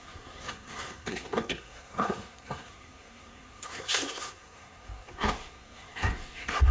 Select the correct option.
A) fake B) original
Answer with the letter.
A